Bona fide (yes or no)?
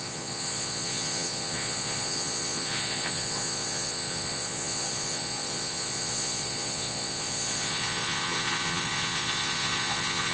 no